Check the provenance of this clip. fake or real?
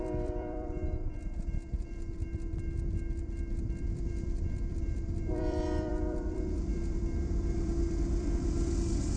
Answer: fake